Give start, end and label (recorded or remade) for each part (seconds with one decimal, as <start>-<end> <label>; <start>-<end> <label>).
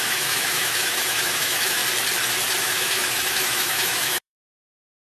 0.0-1.8 remade; 1.8-2.6 recorded; 2.6-5.1 remade